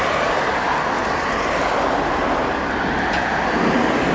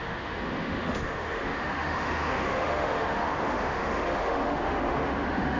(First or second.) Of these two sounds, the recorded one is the first